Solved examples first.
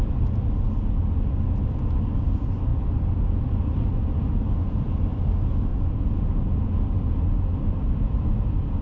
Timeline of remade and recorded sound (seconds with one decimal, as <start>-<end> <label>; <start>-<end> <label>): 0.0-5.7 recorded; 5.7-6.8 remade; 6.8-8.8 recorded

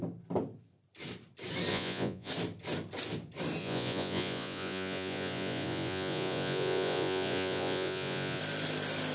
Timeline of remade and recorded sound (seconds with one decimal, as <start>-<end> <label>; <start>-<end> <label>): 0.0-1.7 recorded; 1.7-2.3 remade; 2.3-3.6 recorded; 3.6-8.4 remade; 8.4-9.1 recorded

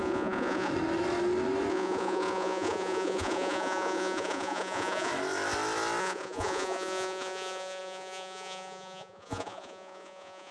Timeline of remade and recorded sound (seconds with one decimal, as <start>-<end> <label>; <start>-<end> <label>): 0.0-0.7 remade; 0.7-1.7 recorded; 1.7-5.1 remade; 5.1-6.0 recorded; 6.0-10.5 remade

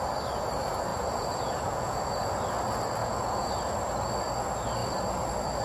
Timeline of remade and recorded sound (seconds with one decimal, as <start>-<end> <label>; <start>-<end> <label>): 0.0-0.9 recorded; 0.9-2.3 remade; 2.3-3.0 recorded; 3.0-3.5 remade; 3.5-5.6 recorded

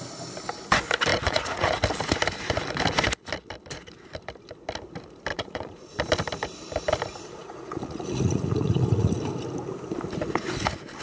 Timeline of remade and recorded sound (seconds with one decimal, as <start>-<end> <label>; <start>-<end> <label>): 0.0-1.1 recorded; 1.1-1.8 remade; 1.8-5.3 recorded; 5.3-5.9 remade; 5.9-7.4 recorded; 7.4-9.2 remade; 9.2-11.0 recorded